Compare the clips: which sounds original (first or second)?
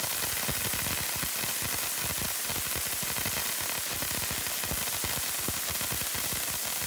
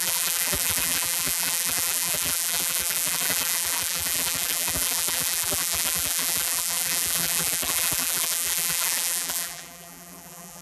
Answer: first